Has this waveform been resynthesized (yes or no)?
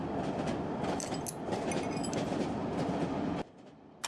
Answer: no